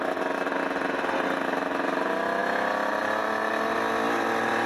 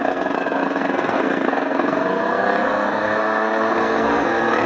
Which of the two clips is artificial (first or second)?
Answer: second